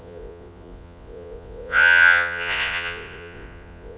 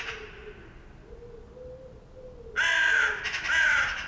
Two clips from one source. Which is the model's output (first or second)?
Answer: first